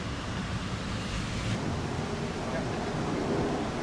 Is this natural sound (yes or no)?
yes